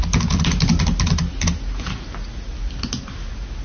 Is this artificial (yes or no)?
no